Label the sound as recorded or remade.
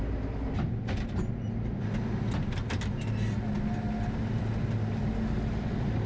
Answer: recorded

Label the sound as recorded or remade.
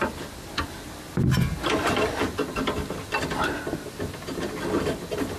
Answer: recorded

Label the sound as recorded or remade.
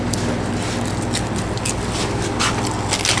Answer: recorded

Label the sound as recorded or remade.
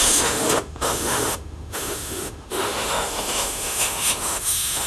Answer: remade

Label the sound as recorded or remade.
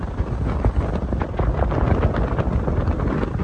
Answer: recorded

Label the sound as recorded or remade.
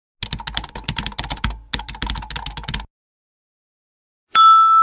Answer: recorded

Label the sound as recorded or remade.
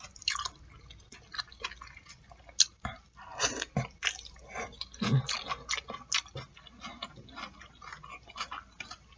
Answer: recorded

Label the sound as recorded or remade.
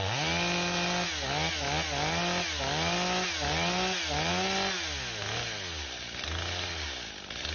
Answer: recorded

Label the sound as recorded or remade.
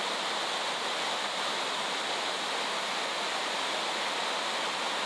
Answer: recorded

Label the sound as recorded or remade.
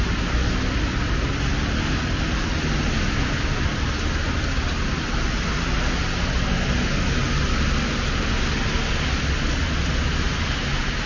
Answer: recorded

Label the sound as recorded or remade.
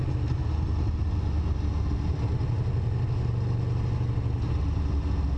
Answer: recorded